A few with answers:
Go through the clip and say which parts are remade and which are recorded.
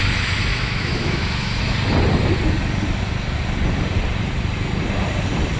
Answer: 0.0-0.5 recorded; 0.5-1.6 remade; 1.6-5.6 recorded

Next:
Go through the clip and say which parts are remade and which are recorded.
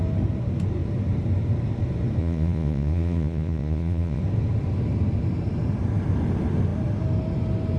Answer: 0.0-2.2 recorded; 2.2-4.2 remade; 4.2-7.8 recorded